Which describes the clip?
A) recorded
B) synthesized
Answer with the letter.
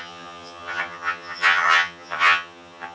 B